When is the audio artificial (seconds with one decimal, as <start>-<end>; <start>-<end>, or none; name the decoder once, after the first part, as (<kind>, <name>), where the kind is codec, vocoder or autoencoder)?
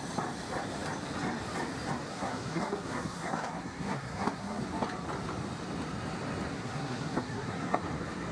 2.1-4.6 (codec, SNAC); 6.5-7.8